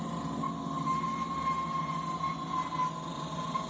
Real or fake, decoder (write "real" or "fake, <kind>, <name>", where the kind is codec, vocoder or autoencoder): real